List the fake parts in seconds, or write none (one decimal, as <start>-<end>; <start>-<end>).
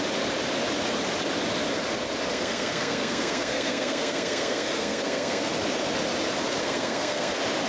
2.3-5.5; 6.6-7.3